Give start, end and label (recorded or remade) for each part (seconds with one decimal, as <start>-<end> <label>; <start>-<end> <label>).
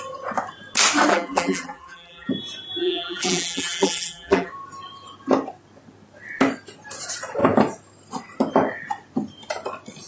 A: 0.0-1.1 recorded; 1.1-2.3 remade; 2.3-2.8 recorded; 2.8-4.5 remade; 4.5-10.1 recorded